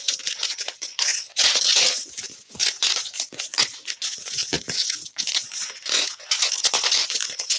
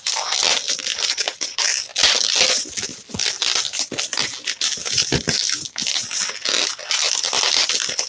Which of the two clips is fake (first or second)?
first